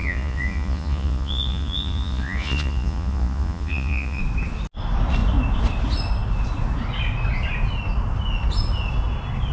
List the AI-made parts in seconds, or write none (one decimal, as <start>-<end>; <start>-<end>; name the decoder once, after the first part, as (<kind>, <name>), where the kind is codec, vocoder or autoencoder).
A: 0.0-4.2 (vocoder, Vocos)